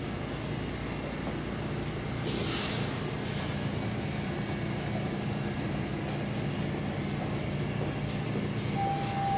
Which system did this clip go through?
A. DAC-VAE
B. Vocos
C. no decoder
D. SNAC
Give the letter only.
C